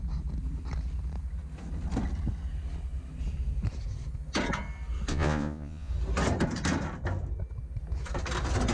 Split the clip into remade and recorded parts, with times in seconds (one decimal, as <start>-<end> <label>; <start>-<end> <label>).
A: 0.0-5.1 recorded; 5.1-5.9 remade; 5.9-8.7 recorded